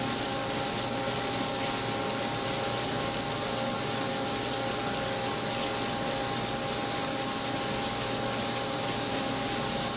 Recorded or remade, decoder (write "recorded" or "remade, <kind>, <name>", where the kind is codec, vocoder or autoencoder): recorded